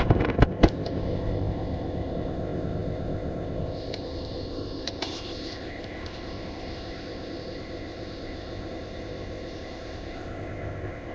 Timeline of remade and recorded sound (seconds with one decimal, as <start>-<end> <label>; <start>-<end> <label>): 0.0-11.1 remade